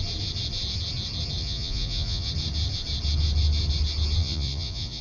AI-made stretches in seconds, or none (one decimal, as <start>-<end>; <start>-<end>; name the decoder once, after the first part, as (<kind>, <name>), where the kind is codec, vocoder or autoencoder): 1.4-2.3 (vocoder, Vocos); 4.2-5.0